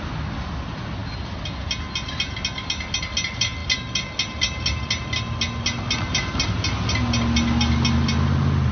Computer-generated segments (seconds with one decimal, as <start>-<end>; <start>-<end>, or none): none